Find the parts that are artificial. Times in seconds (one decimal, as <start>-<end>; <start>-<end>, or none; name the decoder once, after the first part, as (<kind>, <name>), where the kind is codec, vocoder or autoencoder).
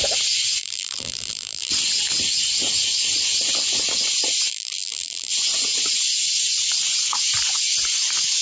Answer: 0.6-1.7 (vocoder, BigVGAN v2); 4.5-5.3